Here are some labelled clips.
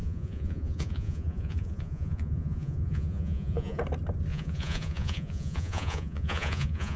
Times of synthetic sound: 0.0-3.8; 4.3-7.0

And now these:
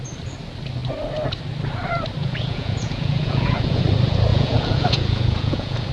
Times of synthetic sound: 2.2-3.8; 4.3-5.9

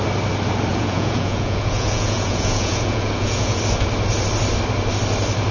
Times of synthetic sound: 0.7-3.6

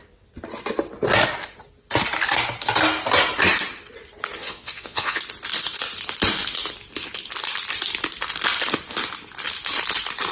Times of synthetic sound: 4.4-5.2